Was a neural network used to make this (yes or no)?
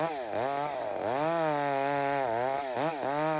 no